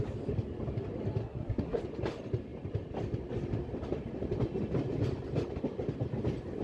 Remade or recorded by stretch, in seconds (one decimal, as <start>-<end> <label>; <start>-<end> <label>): 0.0-1.2 recorded; 1.2-1.8 remade; 1.8-6.6 recorded